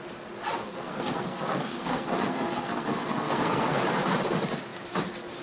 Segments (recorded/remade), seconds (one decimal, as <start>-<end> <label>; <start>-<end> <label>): 0.0-0.6 recorded; 0.6-3.8 remade; 3.8-5.4 recorded